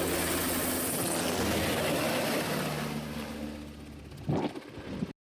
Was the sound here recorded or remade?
recorded